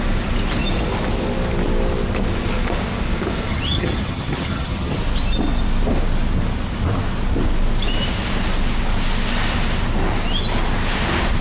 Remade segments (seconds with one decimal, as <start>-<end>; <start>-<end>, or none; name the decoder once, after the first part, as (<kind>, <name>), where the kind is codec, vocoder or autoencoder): 3.5-5.0 (vocoder, HiFi-GAN)